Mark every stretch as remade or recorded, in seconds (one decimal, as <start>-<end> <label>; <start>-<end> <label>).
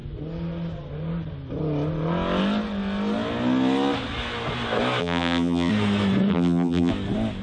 0.0-5.0 recorded; 5.0-5.7 remade; 5.7-6.3 recorded; 6.3-6.9 remade; 6.9-7.4 recorded